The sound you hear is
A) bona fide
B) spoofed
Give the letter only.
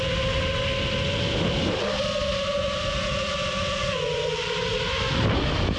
A